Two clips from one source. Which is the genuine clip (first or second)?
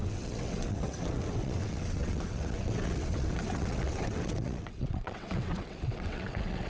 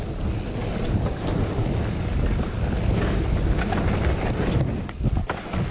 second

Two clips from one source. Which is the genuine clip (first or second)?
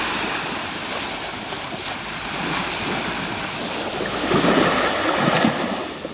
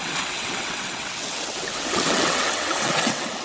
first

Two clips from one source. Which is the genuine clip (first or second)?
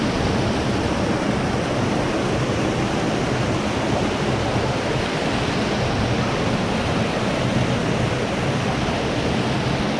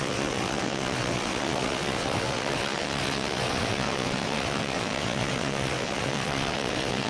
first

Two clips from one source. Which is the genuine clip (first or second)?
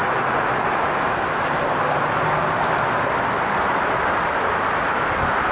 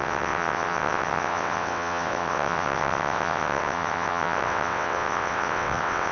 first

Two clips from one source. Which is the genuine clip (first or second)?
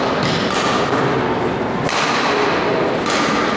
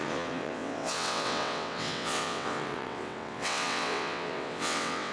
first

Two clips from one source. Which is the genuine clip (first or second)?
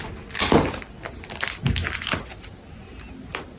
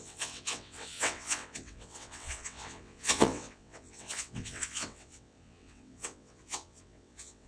first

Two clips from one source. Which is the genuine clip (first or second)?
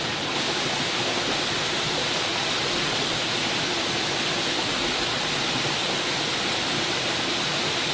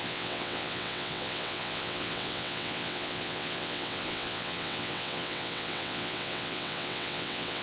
first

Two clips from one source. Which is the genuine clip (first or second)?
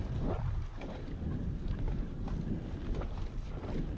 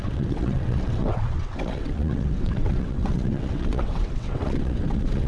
first